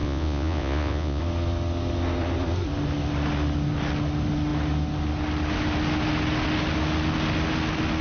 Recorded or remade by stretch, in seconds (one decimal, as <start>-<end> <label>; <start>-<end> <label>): 0.0-1.2 remade; 1.2-8.0 recorded